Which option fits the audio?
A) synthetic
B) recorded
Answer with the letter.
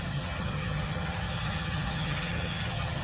A